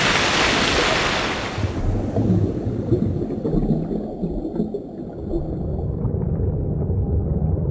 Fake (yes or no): no